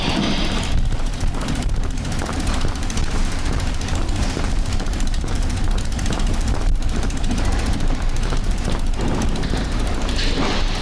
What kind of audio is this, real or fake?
fake